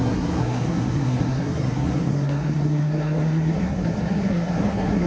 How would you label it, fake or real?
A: fake